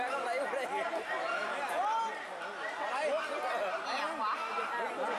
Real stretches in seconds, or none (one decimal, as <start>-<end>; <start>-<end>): 0.0-5.2

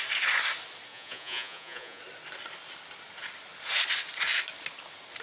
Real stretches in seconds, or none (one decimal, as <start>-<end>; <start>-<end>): 0.0-0.9; 2.0-5.2

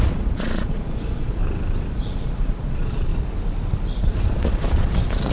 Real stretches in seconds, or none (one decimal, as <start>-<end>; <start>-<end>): 1.4-1.9; 3.1-4.0

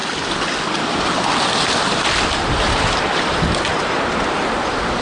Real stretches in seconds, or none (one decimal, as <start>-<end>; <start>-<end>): 0.0-5.0

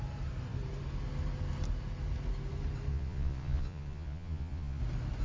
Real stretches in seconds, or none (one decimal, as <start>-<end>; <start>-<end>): 0.0-2.9; 4.8-5.2

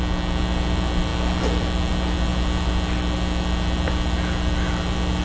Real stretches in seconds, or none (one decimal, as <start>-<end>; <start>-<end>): 0.0-5.2

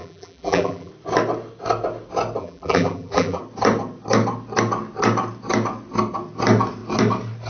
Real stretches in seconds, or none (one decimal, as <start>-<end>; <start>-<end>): 0.9-2.4; 3.4-7.5